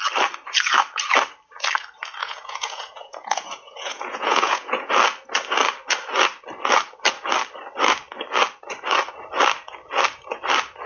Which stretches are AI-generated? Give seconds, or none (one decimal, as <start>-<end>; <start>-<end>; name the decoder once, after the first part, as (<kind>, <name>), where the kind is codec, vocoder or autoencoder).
2.2-4.9 (vocoder, Vocos)